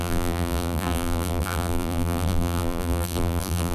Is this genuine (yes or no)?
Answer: no